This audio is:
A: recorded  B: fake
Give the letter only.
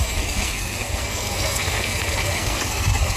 B